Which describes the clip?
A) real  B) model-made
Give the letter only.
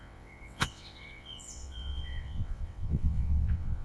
B